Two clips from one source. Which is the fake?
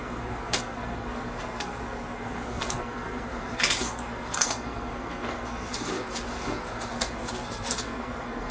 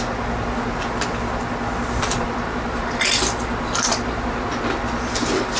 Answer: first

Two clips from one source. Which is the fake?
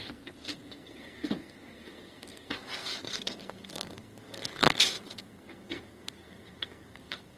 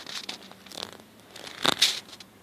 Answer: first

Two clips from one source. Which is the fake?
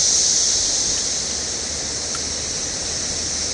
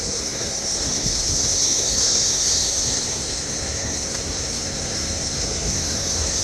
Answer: second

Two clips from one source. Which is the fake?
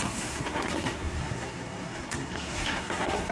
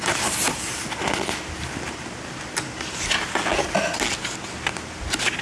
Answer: first